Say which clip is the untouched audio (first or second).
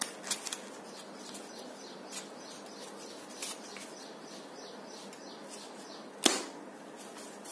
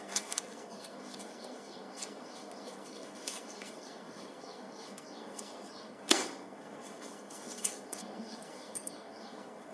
first